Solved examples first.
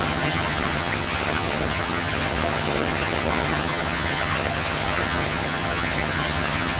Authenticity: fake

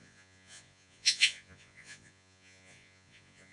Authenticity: fake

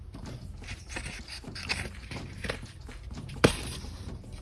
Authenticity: fake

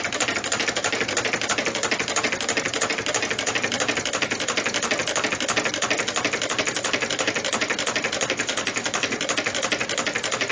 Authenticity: real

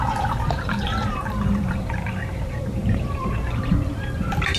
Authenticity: fake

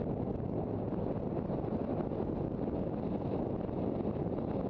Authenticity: real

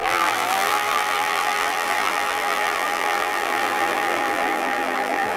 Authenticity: fake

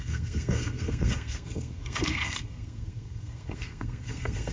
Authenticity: fake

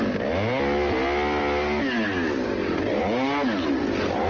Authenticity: real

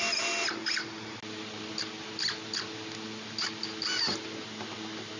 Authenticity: real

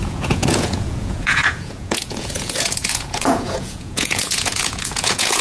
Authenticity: fake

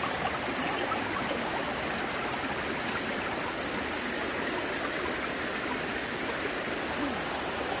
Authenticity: real